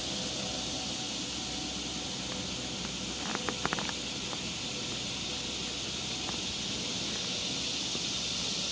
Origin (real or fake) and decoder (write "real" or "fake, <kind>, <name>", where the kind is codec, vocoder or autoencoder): real